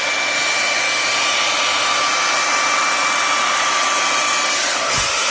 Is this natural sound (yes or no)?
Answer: yes